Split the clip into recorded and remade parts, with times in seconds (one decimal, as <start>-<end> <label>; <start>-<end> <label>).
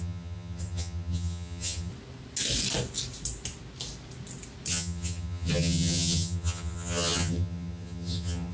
0.0-1.9 remade; 1.9-4.7 recorded; 4.7-8.5 remade